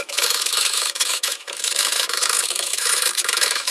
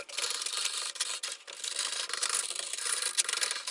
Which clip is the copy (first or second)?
first